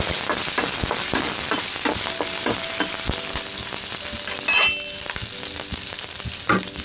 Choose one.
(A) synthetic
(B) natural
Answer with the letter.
B